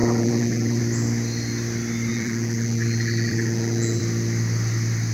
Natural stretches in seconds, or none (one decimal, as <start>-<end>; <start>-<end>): 0.8-2.1; 4.0-5.1